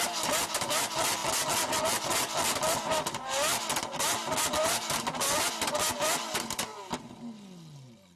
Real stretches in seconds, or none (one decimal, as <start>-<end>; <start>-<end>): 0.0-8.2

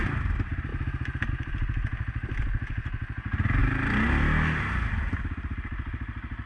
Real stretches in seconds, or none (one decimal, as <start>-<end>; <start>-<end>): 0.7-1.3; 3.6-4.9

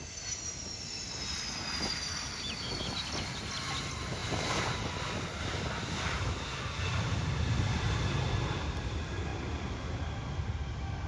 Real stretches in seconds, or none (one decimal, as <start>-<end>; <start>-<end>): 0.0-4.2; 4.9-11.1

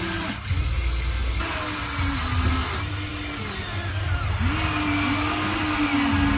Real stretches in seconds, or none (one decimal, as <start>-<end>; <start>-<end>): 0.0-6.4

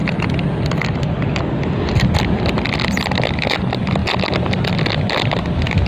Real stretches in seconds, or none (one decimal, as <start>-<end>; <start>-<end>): 0.0-5.9